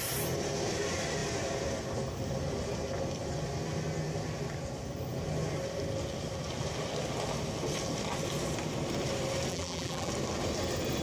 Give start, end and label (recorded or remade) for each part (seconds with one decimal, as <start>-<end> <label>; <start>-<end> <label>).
0.0-9.5 recorded; 9.5-10.1 remade; 10.1-11.0 recorded